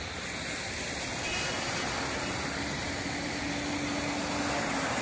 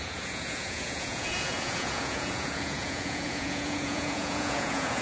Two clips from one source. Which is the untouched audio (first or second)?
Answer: first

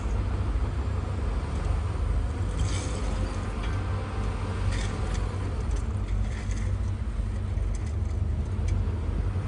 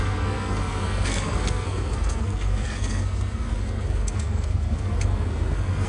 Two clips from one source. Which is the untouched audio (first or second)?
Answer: first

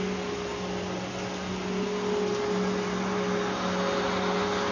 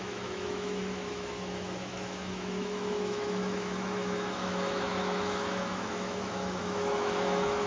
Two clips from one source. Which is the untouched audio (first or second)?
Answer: first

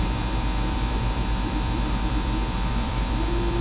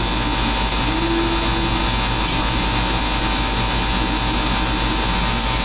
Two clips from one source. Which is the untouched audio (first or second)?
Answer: second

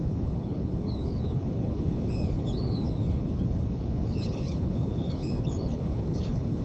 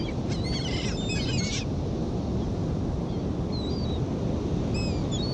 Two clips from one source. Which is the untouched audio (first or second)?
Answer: second